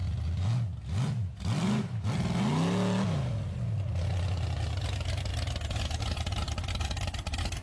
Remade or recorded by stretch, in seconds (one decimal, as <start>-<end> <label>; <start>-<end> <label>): 0.0-7.6 recorded